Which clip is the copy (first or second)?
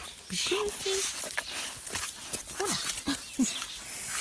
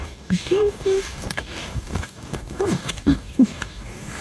second